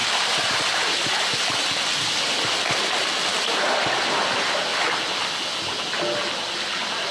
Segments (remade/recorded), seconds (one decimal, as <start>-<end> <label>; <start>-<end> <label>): 0.0-7.1 recorded